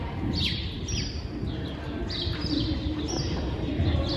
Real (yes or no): yes